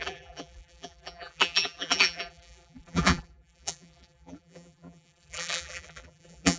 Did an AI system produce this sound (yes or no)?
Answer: yes